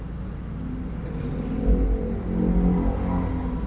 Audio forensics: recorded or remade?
recorded